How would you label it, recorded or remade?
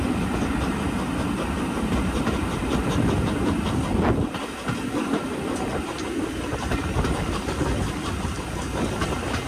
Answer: recorded